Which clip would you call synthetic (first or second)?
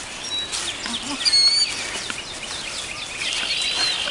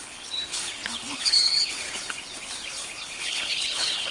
second